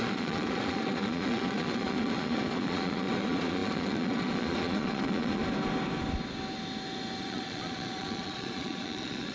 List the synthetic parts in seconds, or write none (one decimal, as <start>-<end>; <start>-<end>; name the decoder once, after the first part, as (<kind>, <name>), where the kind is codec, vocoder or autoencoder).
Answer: 0.0-5.4 (vocoder, Vocos); 7.2-9.3